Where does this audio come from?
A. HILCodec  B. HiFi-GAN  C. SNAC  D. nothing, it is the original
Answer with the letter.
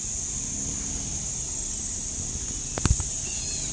D